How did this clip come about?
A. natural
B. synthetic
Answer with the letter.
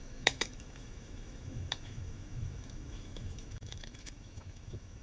B